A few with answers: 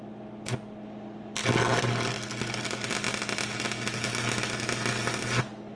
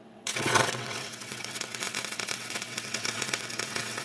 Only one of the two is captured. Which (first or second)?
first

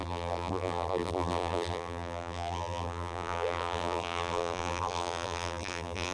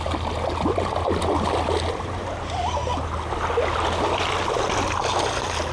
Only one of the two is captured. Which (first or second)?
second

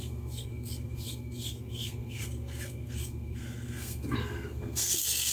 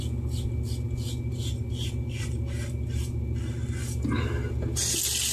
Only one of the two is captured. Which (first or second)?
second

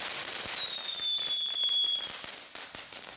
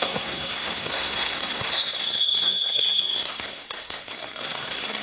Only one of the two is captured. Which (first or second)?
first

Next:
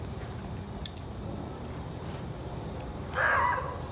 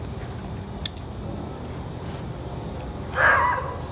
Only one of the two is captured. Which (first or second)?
second